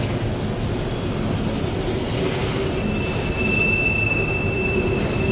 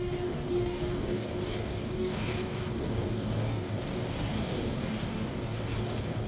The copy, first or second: second